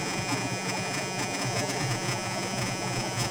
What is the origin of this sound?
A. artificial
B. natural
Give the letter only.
A